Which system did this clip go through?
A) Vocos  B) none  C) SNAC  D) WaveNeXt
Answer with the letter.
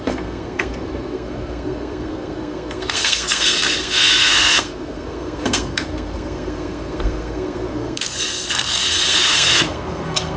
C